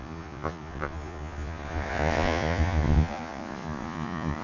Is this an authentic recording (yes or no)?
no